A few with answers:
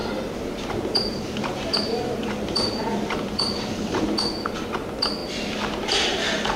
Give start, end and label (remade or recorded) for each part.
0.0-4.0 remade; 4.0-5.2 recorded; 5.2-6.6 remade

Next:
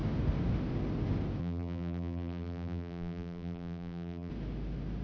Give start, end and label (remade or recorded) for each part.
0.0-1.4 recorded; 1.4-4.3 remade; 4.3-5.0 recorded

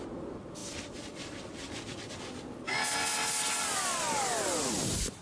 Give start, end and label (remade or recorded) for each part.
0.0-0.6 recorded; 0.6-2.2 remade; 2.2-5.2 recorded

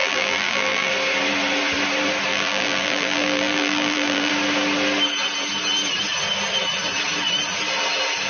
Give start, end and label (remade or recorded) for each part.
0.0-0.9 remade; 0.9-2.3 recorded; 2.3-4.3 remade; 4.3-8.3 recorded

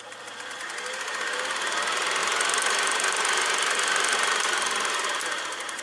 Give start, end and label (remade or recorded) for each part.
0.0-2.2 recorded; 2.2-5.8 remade

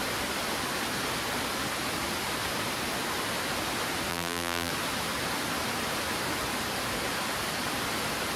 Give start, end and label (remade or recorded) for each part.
0.0-4.1 recorded; 4.1-4.7 remade; 4.7-8.4 recorded

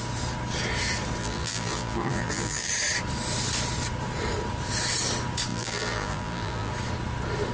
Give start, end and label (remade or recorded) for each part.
0.0-1.2 recorded; 1.2-2.7 remade; 2.7-5.5 recorded; 5.5-6.7 remade; 6.7-7.5 recorded